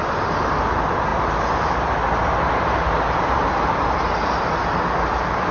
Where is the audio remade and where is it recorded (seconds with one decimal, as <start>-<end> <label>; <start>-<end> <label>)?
0.0-5.5 recorded